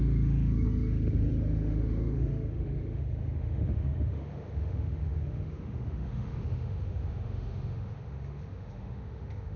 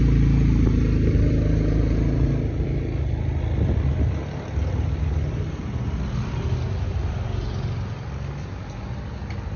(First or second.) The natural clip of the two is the second